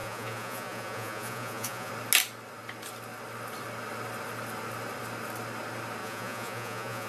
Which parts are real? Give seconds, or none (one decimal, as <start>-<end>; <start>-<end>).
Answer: 1.9-6.0